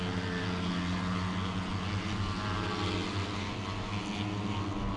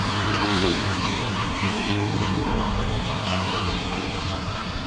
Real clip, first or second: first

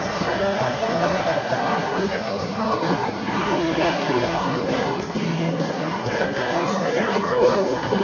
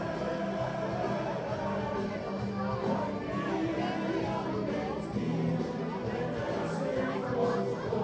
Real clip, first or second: second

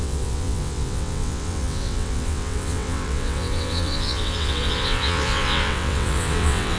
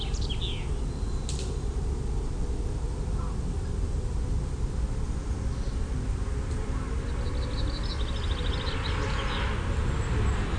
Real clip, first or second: second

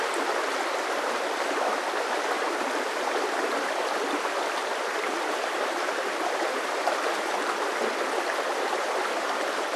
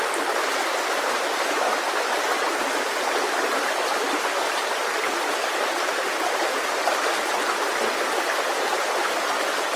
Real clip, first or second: second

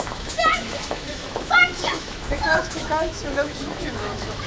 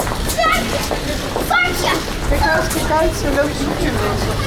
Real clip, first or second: second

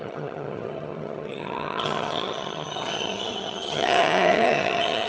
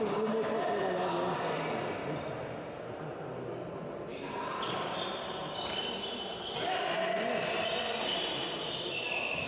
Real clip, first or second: second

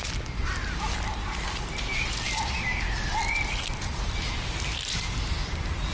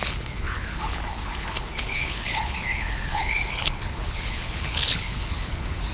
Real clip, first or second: first